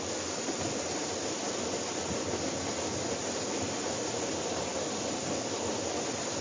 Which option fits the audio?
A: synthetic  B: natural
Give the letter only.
B